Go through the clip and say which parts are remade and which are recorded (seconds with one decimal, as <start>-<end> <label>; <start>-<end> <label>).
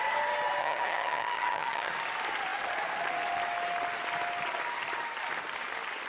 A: 0.0-0.6 recorded; 0.6-1.9 remade; 1.9-6.1 recorded